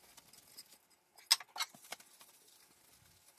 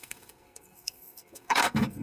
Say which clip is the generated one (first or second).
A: second